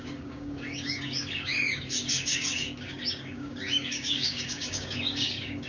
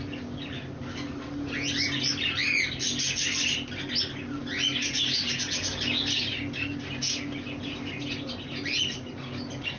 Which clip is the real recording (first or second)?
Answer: second